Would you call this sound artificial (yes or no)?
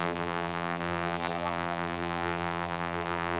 yes